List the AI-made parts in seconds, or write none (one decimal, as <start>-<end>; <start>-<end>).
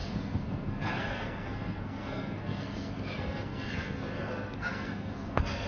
0.0-5.7